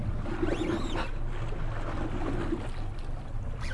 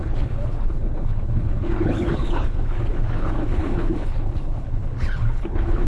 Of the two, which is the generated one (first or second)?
second